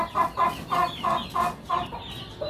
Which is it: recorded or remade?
recorded